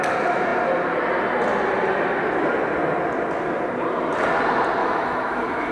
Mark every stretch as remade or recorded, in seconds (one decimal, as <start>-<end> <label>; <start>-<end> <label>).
0.0-4.8 recorded; 4.8-5.7 remade